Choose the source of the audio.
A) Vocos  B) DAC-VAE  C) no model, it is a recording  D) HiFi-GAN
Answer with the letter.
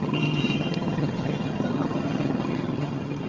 D